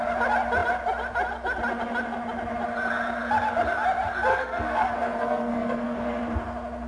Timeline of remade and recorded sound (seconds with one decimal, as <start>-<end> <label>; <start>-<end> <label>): 0.0-4.3 recorded; 4.3-6.2 remade; 6.2-6.9 recorded